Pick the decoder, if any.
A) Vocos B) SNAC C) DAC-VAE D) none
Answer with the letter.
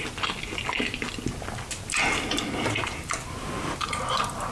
D